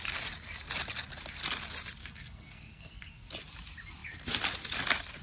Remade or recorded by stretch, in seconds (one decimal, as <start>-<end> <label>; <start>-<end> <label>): 0.0-2.0 recorded; 2.0-3.3 remade; 3.3-5.2 recorded